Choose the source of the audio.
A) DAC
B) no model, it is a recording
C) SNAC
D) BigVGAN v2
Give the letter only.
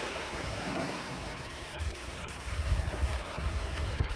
C